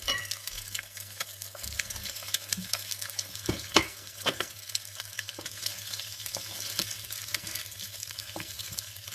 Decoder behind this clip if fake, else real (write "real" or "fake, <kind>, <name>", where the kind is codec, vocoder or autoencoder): fake, codec, SNAC